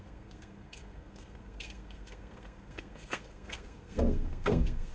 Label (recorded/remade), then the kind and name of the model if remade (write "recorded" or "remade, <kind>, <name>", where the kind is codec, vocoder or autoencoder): remade, codec, SNAC